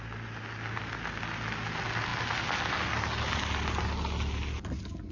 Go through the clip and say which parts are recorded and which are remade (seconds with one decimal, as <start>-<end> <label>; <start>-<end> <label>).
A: 0.0-5.1 recorded